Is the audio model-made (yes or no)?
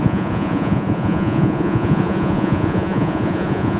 yes